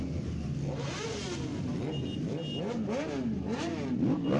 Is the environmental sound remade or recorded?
recorded